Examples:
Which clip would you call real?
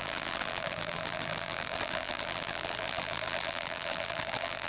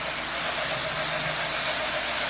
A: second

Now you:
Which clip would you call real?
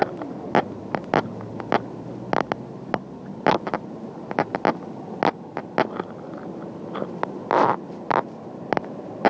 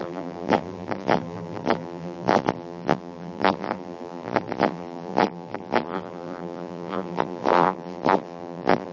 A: first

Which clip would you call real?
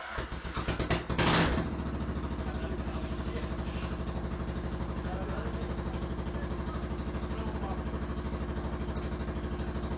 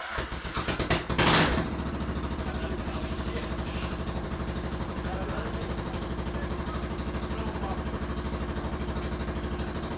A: first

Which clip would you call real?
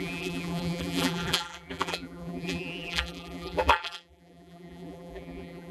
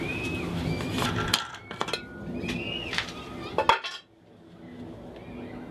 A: second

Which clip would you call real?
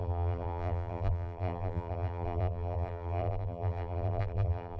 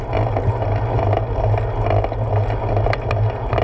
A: second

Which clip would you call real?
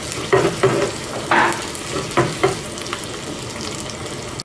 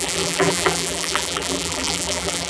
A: first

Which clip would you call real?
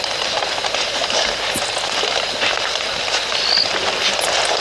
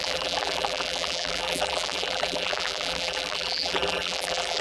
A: first